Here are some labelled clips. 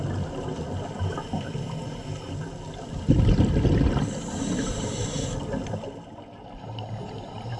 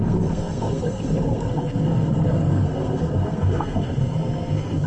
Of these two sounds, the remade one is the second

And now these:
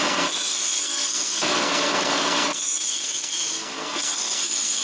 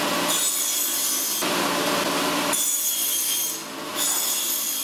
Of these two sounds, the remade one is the first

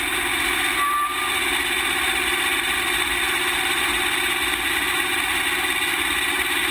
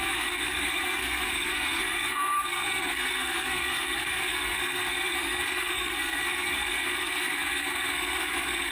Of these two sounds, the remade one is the second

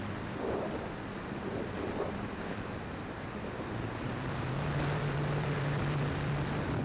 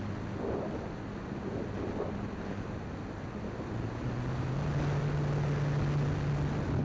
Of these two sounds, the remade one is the first